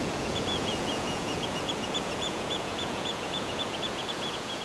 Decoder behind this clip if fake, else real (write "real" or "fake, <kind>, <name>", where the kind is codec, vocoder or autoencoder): fake, vocoder, Vocos